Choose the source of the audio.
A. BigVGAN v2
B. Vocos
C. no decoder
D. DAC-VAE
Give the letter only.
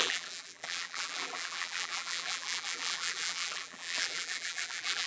A